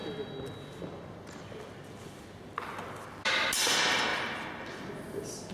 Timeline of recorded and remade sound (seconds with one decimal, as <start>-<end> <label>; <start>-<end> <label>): 0.0-5.5 recorded